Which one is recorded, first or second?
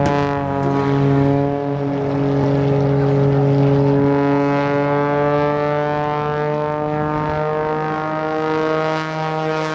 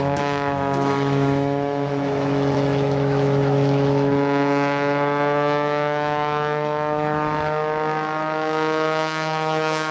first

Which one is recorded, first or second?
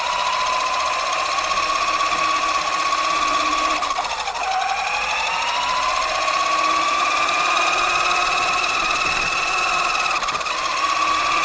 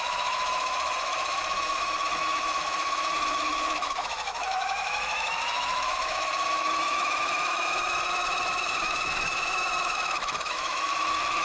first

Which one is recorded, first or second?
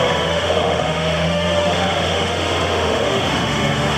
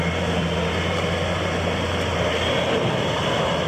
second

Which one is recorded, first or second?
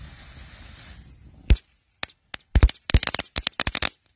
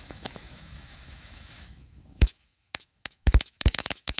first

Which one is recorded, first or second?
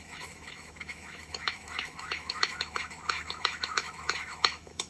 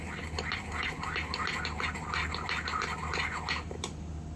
second